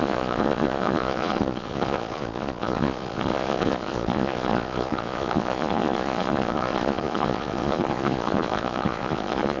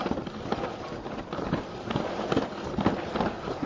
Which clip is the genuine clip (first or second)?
second